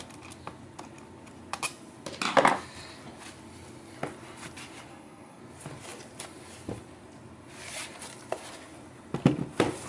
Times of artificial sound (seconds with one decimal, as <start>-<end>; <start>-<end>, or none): 4.9-5.4